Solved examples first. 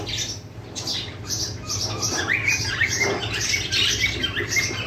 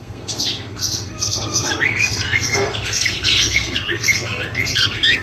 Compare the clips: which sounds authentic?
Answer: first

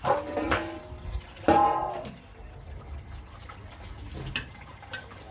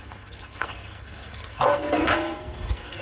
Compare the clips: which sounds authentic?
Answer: first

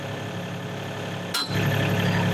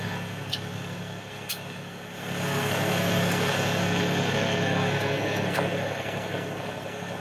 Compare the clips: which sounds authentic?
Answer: first